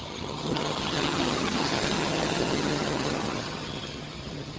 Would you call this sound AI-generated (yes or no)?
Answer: yes